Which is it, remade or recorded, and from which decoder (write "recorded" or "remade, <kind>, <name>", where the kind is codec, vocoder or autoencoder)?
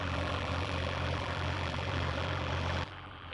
remade, vocoder, BigVGAN v2